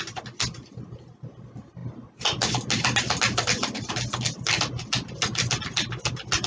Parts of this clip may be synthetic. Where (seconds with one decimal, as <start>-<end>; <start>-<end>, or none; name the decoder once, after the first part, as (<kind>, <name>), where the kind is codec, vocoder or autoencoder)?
none